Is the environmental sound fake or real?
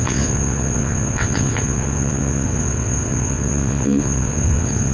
fake